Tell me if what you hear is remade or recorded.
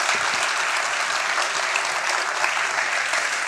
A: recorded